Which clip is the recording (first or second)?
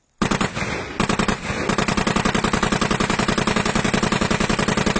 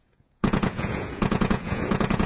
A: first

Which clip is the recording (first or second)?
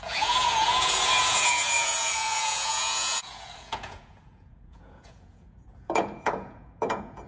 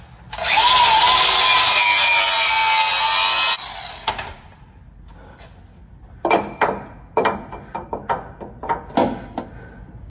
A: second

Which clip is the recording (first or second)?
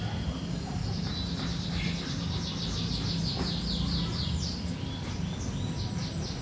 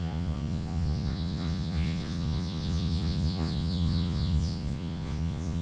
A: first